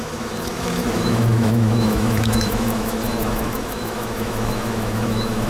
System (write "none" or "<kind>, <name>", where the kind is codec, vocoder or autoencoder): autoencoder, DAC-VAE